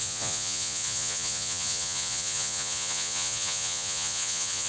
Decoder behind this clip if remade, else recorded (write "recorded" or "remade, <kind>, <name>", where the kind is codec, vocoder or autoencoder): remade, vocoder, Vocos